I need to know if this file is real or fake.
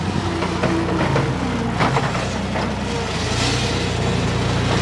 real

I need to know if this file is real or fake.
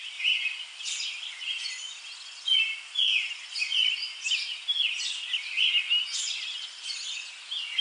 real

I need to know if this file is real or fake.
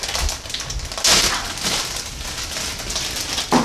real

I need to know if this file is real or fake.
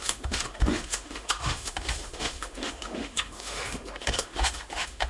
fake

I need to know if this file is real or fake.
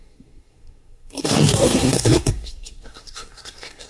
fake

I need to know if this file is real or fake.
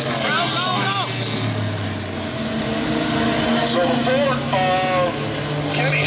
real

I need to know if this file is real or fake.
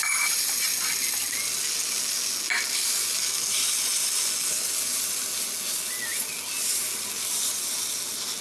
real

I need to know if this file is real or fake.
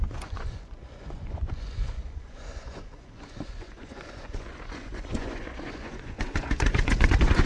fake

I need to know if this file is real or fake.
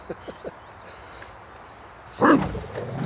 real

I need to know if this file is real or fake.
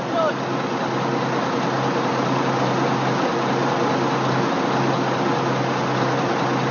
real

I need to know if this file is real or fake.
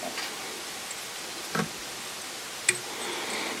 real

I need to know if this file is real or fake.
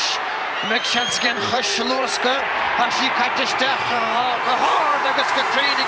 fake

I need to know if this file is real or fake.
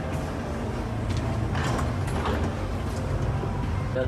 real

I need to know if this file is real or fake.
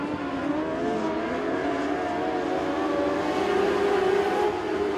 real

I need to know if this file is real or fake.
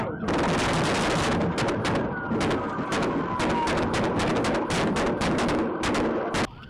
real